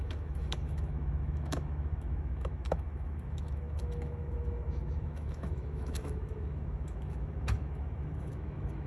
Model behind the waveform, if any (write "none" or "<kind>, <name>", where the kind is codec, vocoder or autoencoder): autoencoder, DAC-VAE